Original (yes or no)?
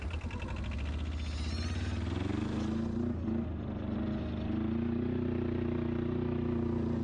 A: yes